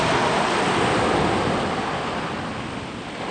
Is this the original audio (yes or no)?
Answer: yes